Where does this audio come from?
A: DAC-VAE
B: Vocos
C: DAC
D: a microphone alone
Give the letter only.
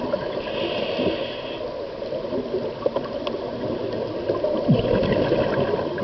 D